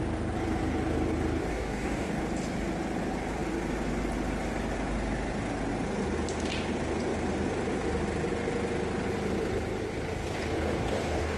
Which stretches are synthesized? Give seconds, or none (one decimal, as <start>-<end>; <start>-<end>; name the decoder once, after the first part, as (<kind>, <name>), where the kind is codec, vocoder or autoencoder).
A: 1.5-2.2 (codec, DAC); 10.1-11.4